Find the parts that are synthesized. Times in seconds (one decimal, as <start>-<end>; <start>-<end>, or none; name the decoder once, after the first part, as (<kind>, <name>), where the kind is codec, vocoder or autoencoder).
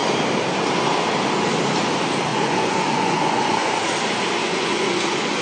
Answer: 2.3-3.8 (vocoder, Vocos); 4.4-5.4